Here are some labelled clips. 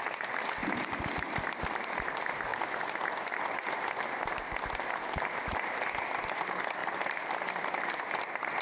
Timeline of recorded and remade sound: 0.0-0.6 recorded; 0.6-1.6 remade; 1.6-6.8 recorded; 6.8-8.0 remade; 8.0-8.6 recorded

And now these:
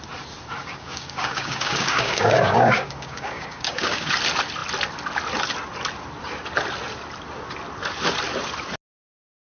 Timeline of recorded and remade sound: 0.0-0.6 recorded; 0.6-4.1 remade; 4.1-9.6 recorded

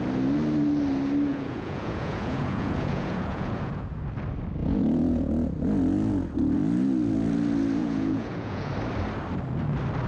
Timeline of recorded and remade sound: 0.0-1.3 recorded; 1.3-4.0 remade; 4.0-4.6 recorded; 4.6-5.3 remade; 5.3-7.8 recorded; 7.8-8.7 remade; 8.7-10.1 recorded

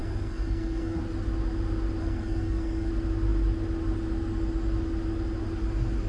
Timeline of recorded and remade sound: 0.0-1.0 remade; 1.0-2.0 recorded; 2.0-2.9 remade; 2.9-6.1 recorded

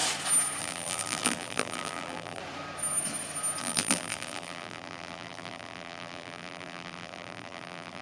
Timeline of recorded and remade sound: 0.0-0.6 recorded; 0.6-2.4 remade; 2.4-3.6 recorded; 3.6-8.0 remade

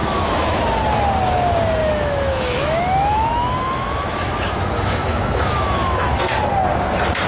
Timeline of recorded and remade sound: 0.0-0.6 remade; 0.6-1.8 recorded; 1.8-6.2 remade; 6.2-7.3 recorded

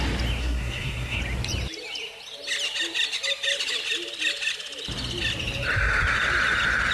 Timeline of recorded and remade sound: 0.0-0.4 recorded; 0.4-1.2 remade; 1.2-6.9 recorded

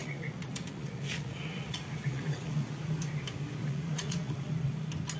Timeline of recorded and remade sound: 0.0-3.1 remade; 3.1-3.6 recorded; 3.6-4.7 remade; 4.7-5.2 recorded